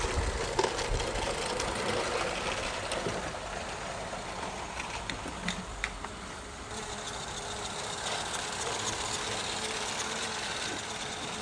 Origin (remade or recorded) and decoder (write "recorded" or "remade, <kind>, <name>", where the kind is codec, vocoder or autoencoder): recorded